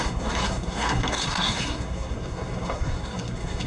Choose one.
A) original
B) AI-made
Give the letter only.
B